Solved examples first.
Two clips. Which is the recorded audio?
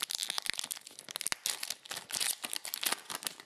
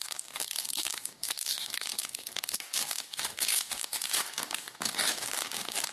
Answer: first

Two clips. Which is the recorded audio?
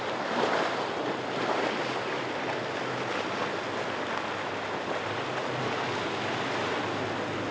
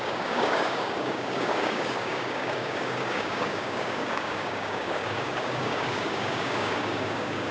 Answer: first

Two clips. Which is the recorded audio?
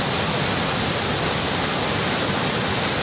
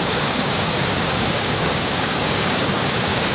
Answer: first